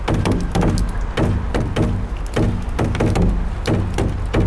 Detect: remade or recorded recorded